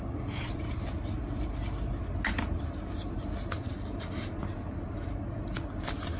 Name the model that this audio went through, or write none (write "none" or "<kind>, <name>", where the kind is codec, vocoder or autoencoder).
none